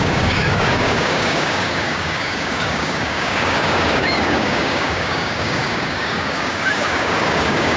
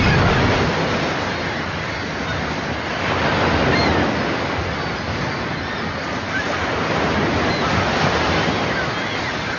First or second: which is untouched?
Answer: second